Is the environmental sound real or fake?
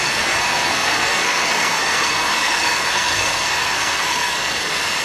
fake